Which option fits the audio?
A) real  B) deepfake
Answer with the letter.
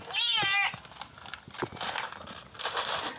A